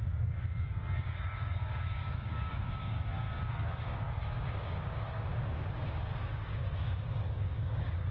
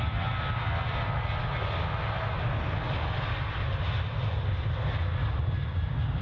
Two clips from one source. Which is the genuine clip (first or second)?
second